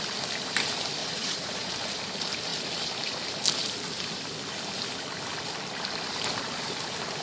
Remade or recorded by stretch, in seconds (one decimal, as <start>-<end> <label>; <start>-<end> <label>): 0.0-1.0 recorded; 1.0-1.7 remade; 1.7-7.2 recorded

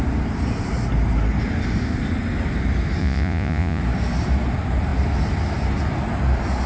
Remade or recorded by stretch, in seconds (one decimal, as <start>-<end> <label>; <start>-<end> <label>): 0.0-3.0 recorded; 3.0-3.8 remade; 3.8-6.7 recorded

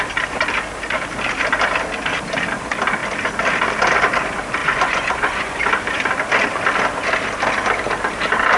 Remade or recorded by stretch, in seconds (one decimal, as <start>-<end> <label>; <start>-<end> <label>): 0.0-4.6 recorded; 4.6-5.7 remade; 5.7-8.6 recorded

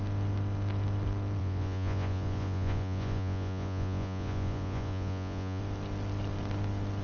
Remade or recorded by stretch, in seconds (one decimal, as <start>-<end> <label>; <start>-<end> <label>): 0.0-1.4 recorded; 1.4-5.6 remade; 5.6-7.0 recorded

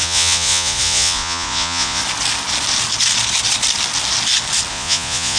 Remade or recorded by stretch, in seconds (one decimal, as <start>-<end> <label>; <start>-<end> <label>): 0.0-2.0 remade; 2.0-4.7 recorded; 4.7-5.4 remade

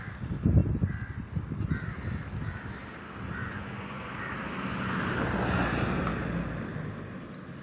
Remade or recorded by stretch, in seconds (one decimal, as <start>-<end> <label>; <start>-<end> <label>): 0.0-3.4 recorded; 3.4-4.1 remade; 4.1-7.6 recorded